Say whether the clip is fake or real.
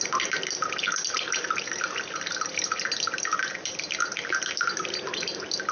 real